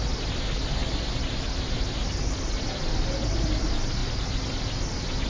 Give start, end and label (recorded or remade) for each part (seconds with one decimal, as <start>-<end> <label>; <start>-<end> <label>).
0.0-5.3 recorded